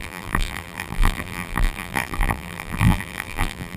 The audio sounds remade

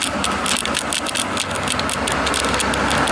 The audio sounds recorded